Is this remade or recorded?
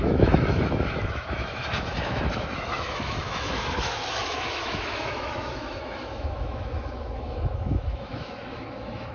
remade